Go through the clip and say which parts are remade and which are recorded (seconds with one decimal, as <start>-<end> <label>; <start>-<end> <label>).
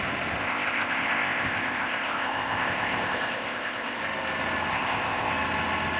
0.0-0.4 recorded; 0.4-4.0 remade; 4.0-4.7 recorded; 4.7-5.3 remade; 5.3-6.0 recorded